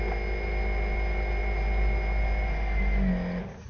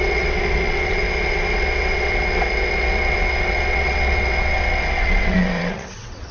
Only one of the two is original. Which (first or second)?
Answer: first